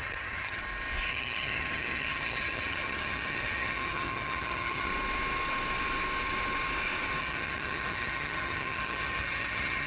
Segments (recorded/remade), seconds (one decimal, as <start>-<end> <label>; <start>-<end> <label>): 0.0-0.6 remade; 0.6-1.1 recorded; 1.1-4.9 remade; 4.9-7.2 recorded; 7.2-9.9 remade